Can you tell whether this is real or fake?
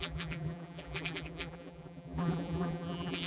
fake